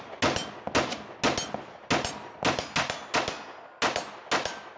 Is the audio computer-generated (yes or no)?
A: no